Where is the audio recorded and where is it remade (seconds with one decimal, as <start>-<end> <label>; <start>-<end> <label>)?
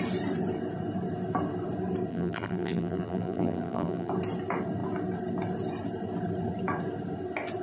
0.0-2.1 recorded; 2.1-4.1 remade; 4.1-7.6 recorded